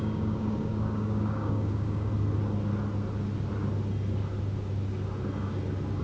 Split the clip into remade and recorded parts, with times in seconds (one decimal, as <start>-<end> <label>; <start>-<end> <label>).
0.0-2.1 remade; 2.1-6.0 recorded